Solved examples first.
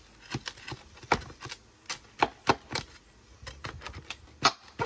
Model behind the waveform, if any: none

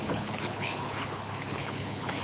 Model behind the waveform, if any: codec, HILCodec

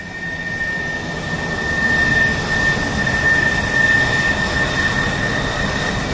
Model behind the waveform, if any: none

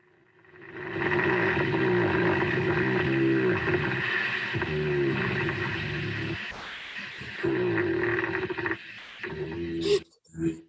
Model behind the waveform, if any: none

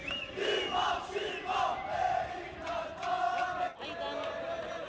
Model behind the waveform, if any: none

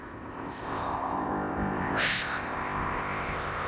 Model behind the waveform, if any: codec, ZipCodec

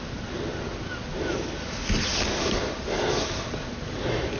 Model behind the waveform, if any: none